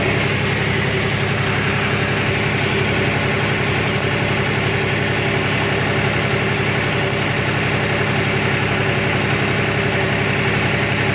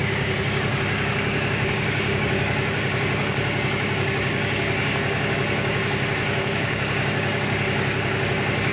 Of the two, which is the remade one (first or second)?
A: second